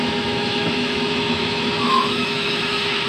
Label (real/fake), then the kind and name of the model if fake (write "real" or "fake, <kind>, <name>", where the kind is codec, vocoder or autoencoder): fake, autoencoder, DAC-VAE